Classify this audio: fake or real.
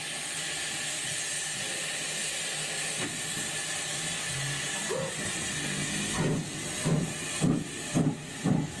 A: real